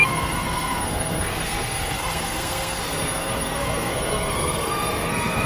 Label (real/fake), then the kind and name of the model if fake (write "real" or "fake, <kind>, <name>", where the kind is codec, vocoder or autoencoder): fake, codec, SNAC